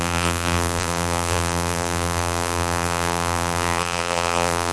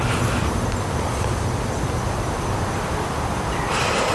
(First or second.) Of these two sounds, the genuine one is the second